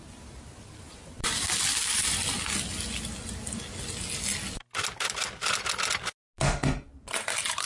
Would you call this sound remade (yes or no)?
no